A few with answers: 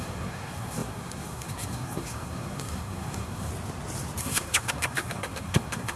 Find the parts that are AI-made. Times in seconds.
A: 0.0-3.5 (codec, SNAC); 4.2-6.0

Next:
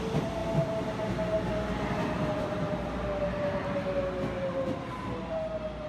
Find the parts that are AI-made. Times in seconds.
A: none

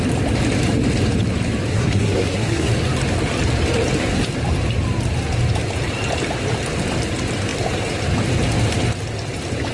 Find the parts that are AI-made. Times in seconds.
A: 1.7-2.7 (codec, SNAC)

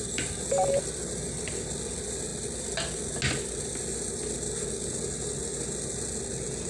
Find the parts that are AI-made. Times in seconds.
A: none